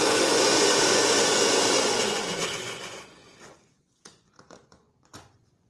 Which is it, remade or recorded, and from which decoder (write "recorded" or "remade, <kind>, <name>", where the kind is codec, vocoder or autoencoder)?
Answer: remade, vocoder, Vocos